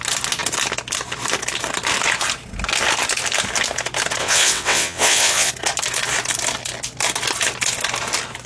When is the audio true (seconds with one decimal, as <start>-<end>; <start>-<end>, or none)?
0.0-4.2; 5.5-8.5